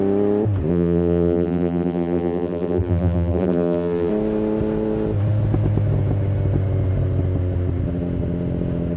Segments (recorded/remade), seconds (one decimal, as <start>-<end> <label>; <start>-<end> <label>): 0.0-0.7 recorded; 0.7-4.1 remade; 4.1-9.0 recorded